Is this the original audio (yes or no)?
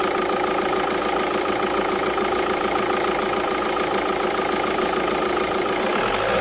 yes